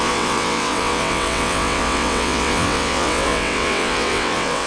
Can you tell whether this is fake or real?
fake